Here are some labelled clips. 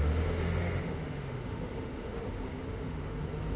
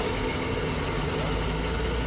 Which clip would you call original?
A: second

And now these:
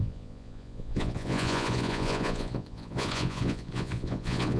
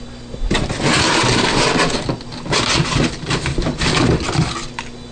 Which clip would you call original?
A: second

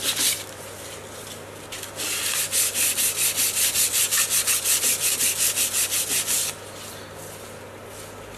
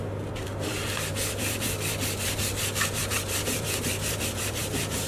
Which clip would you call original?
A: first